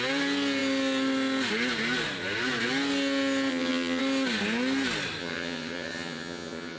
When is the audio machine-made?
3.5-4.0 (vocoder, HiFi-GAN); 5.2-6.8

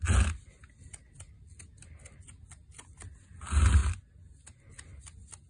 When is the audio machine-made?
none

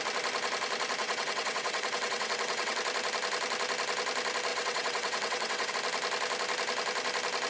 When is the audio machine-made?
1.0-2.8 (vocoder, WaveNeXt); 4.5-5.7